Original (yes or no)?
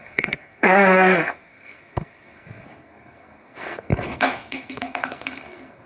no